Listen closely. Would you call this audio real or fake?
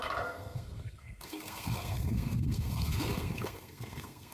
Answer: fake